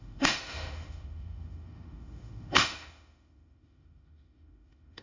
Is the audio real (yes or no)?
no